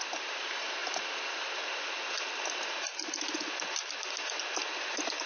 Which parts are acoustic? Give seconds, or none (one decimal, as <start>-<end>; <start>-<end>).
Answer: 0.0-5.3

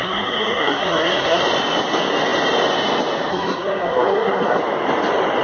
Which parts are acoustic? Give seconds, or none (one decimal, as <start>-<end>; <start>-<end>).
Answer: 1.4-3.3; 4.6-5.4

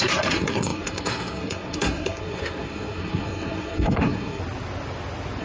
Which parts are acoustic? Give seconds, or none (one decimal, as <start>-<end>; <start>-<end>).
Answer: 4.4-5.4

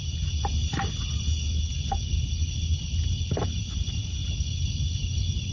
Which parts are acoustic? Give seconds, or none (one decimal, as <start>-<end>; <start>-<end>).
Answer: 0.0-5.5

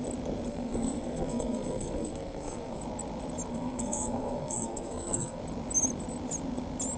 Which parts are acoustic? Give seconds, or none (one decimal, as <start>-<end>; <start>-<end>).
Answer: 0.0-0.5; 2.8-3.5; 5.4-7.0

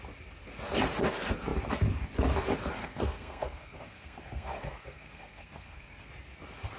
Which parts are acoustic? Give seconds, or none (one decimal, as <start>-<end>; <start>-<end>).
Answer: 0.0-2.8; 6.1-6.8

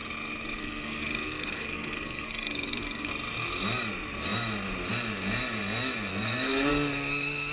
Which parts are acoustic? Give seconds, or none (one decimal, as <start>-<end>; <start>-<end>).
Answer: 0.0-0.6; 3.1-6.1; 6.7-7.5